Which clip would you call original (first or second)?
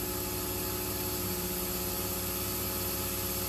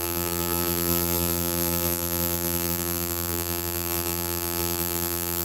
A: first